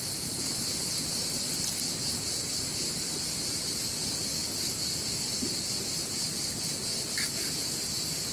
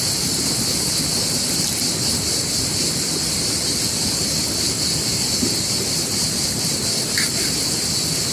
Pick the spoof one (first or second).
second